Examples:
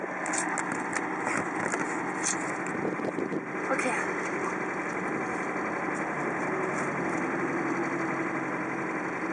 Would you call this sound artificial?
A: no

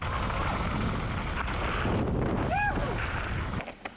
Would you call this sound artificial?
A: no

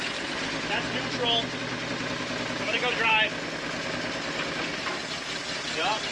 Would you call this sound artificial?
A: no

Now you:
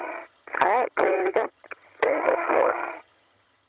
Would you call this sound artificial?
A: yes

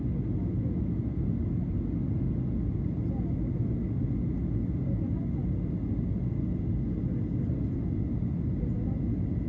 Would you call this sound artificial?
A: no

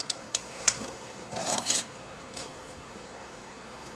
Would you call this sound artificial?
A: yes